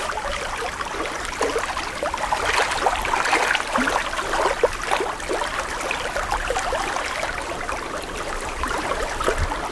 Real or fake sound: real